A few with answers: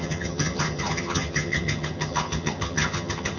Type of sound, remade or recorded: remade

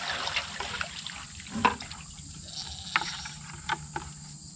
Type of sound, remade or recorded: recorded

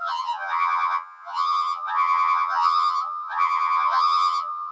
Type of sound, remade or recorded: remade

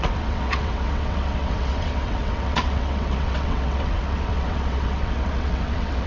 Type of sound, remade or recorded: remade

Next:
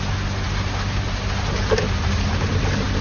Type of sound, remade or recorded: recorded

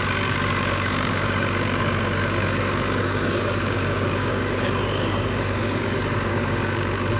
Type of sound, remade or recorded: remade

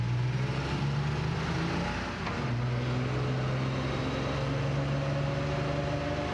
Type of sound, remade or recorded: recorded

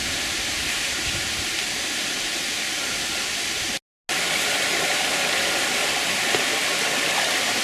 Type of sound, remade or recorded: recorded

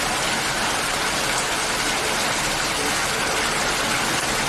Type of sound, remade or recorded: recorded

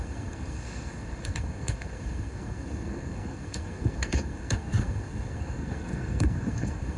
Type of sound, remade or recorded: remade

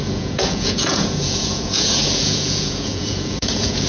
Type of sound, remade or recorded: remade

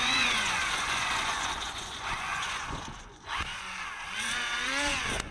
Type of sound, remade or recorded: remade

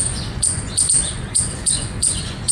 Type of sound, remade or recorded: remade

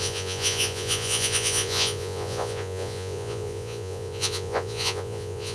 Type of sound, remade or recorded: remade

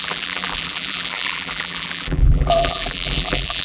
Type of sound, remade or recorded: remade